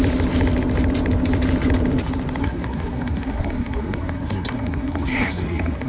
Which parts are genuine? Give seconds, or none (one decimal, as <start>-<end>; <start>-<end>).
0.0-2.4